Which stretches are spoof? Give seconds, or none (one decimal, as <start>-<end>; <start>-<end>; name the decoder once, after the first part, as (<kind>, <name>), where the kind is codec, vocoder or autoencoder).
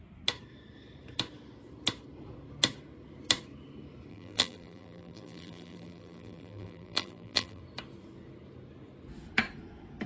4.1-7.6 (vocoder, BigVGAN v2)